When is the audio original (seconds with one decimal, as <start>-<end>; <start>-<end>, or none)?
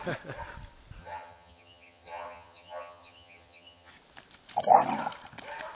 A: 0.0-1.0; 3.9-5.7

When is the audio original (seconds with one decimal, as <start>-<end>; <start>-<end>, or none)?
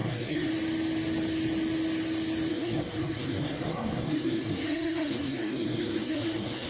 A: 0.5-2.5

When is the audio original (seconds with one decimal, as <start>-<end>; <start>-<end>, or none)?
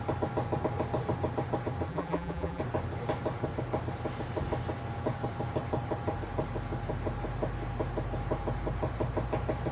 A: 0.0-1.9; 2.6-9.7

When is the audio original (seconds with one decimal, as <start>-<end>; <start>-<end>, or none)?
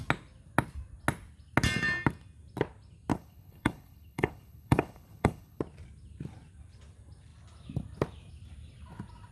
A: 0.0-3.1; 5.6-9.3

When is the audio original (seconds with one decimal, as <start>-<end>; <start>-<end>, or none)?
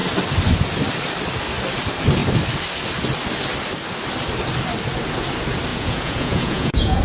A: 0.0-5.7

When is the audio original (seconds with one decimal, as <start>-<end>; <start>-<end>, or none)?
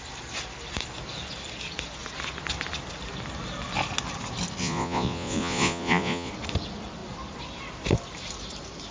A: 0.0-4.6; 6.3-8.9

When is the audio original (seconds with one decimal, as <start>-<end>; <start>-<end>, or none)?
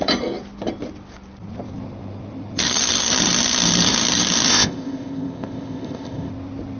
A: 0.0-4.5; 6.3-6.8